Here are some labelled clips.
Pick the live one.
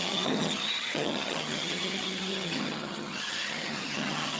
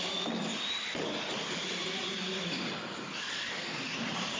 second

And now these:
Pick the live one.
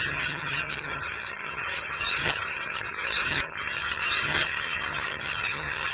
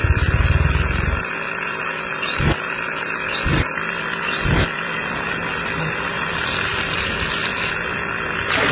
second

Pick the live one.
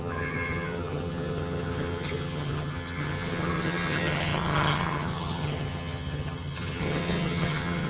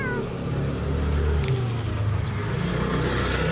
second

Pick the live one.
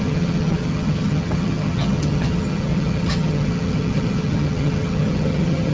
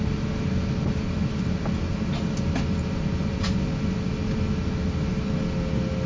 second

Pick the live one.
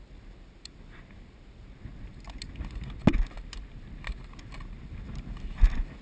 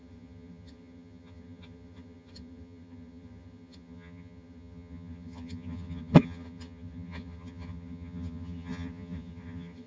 first